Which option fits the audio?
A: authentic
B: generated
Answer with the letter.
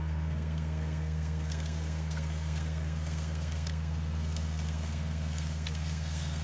B